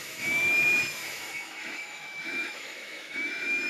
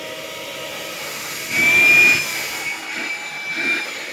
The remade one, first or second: first